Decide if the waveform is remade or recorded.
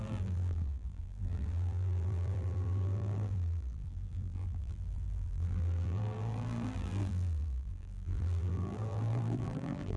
remade